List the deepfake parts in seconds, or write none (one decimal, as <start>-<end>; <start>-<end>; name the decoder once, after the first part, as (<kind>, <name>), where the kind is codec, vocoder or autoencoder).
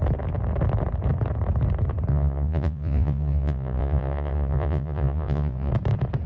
2.1-5.7 (vocoder, Vocos)